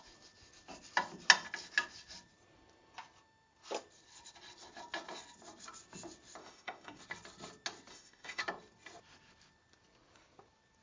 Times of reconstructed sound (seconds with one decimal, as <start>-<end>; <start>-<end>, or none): 6.4-7.0; 7.9-8.4